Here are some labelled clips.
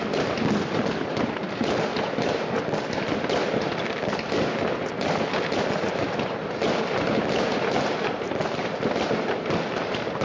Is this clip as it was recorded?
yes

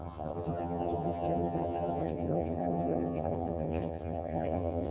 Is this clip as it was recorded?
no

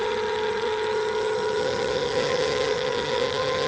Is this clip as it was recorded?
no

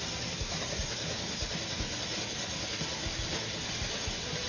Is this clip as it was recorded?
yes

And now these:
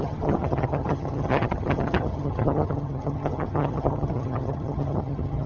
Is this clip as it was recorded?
no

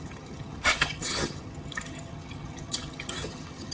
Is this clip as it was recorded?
no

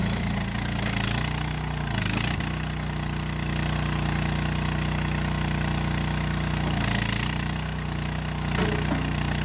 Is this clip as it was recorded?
yes